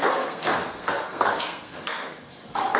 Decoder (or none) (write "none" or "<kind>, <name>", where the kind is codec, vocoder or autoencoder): codec, SNAC